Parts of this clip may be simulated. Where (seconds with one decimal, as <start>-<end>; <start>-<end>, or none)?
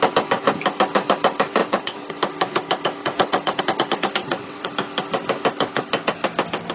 1.6-2.1; 3.0-3.6; 4.2-4.7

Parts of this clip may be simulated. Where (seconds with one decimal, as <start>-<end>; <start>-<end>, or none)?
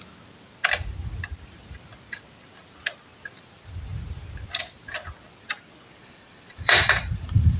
6.0-7.6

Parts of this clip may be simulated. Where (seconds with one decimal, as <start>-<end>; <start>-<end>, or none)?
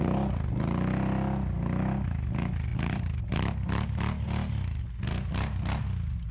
2.7-3.3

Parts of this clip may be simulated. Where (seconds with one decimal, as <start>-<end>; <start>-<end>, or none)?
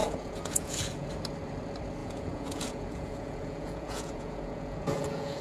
0.0-1.1; 2.0-5.4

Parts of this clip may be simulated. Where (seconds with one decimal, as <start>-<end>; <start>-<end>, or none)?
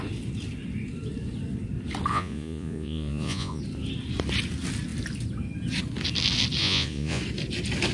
2.1-3.6; 6.6-7.2